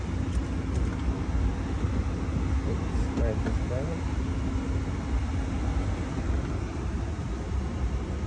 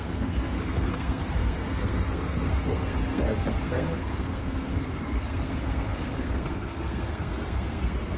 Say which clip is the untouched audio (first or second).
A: first